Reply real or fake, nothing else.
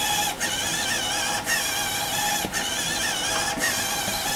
real